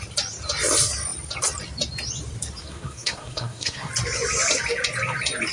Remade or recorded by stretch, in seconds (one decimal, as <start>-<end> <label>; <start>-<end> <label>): 0.0-2.6 recorded; 2.6-3.9 remade; 3.9-5.5 recorded